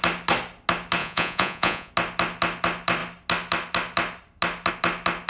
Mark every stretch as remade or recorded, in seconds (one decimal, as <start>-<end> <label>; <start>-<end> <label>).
0.0-1.0 recorded; 1.0-1.9 remade; 1.9-5.3 recorded